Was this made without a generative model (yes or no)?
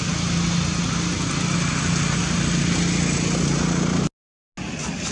yes